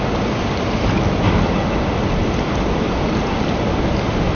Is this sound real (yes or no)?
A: yes